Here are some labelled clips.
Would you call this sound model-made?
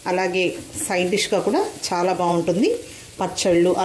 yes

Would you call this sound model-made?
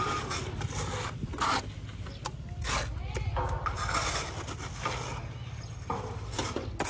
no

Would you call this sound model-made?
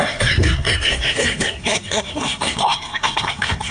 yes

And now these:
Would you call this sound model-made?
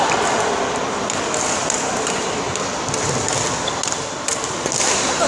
no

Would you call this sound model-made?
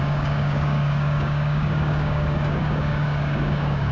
yes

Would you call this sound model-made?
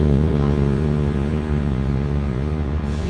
yes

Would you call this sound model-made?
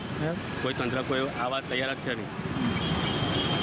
no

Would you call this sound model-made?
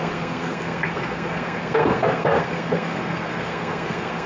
yes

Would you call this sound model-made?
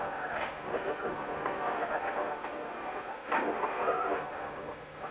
yes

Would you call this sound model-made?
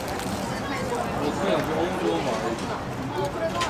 no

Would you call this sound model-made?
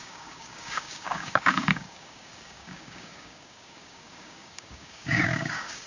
yes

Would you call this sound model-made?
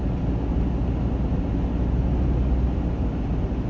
no